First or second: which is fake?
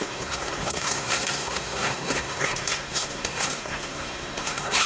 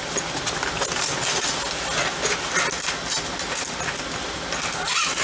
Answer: first